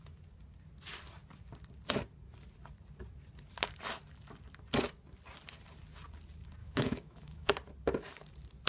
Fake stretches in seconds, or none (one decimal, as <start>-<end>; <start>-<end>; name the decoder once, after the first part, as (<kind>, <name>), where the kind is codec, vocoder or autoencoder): 6.6-7.5 (autoencoder, DAC-VAE)